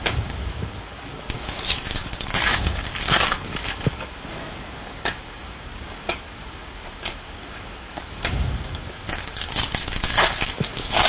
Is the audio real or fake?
fake